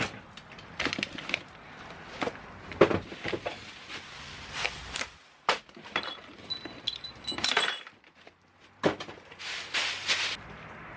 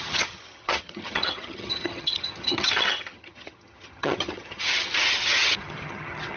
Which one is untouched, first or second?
first